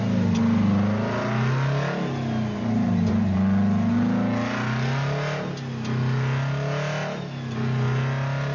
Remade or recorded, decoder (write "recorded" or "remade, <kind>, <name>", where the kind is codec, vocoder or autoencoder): recorded